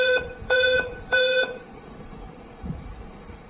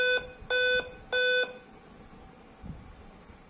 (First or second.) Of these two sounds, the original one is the second